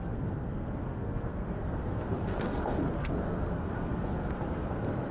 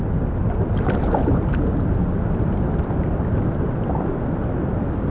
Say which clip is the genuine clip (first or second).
second